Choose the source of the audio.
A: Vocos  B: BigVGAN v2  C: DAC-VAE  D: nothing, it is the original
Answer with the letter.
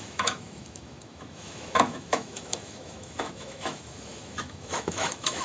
C